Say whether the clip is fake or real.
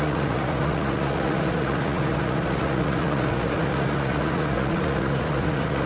fake